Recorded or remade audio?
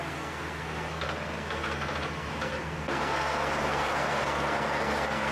remade